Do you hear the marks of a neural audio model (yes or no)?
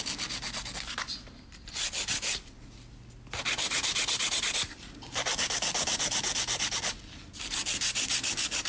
no